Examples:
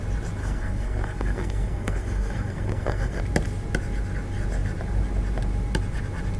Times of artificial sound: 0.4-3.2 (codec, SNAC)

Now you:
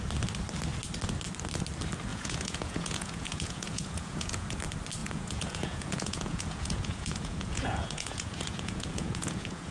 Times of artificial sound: 2.1-4.6 (vocoder, Vocos); 5.0-9.7

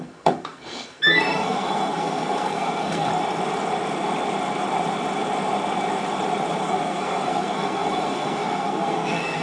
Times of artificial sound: 0.0-3.1 (codec, SNAC); 6.6-9.4